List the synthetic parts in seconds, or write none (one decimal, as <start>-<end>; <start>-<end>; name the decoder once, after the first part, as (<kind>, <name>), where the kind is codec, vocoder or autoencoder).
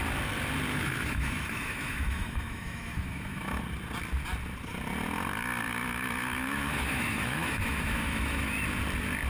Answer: 0.7-3.6 (autoencoder, DAC-VAE); 5.8-8.5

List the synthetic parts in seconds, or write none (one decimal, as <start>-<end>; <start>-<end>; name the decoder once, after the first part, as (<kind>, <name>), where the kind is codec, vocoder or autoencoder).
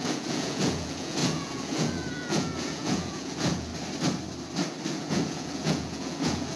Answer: 0.0-3.7 (vocoder, Vocos); 4.9-6.6